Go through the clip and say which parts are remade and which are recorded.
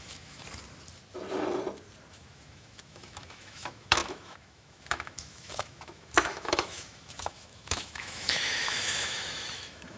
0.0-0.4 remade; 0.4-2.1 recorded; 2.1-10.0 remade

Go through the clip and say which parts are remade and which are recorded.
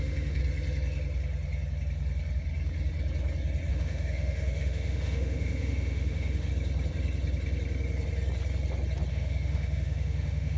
0.0-0.4 remade; 0.4-3.7 recorded; 3.7-6.5 remade; 6.5-9.1 recorded; 9.1-10.6 remade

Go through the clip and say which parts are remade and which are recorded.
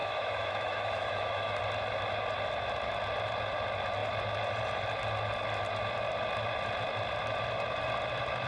0.0-1.6 remade; 1.6-8.5 recorded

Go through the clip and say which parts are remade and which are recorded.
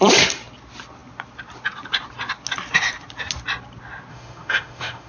0.0-4.1 recorded; 4.1-5.1 remade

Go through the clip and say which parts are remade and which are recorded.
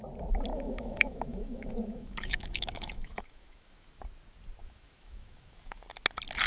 0.0-0.5 recorded; 0.5-3.9 remade; 3.9-4.6 recorded; 4.6-5.8 remade; 5.8-6.5 recorded